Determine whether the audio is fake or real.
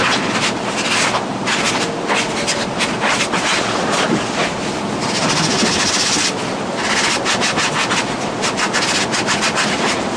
real